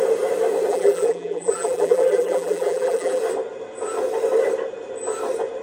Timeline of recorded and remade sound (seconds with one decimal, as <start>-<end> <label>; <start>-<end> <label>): 0.0-0.7 recorded; 0.7-3.2 remade; 3.2-5.6 recorded